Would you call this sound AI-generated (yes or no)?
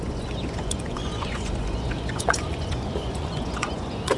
yes